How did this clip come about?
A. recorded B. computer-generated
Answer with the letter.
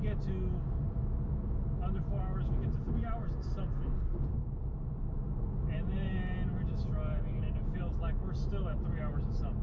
A